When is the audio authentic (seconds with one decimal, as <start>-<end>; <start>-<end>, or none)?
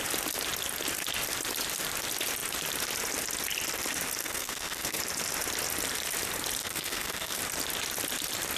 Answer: 0.0-4.2; 5.0-6.6; 7.4-8.6